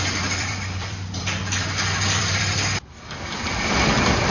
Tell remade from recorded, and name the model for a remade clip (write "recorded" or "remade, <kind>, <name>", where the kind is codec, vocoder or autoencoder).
remade, vocoder, BigVGAN v2